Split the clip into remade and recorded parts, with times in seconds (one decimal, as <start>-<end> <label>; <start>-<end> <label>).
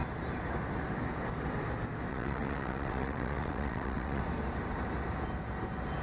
0.0-2.1 recorded; 2.1-4.2 remade; 4.2-6.0 recorded